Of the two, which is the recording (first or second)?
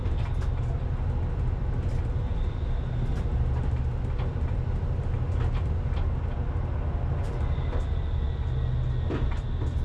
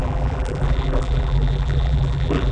first